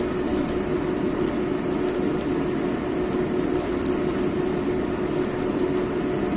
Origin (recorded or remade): recorded